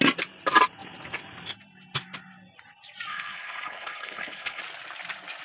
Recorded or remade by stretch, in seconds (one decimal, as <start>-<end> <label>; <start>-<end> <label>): 0.0-3.1 recorded; 3.1-4.6 remade; 4.6-5.4 recorded